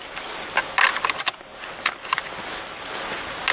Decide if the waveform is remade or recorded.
recorded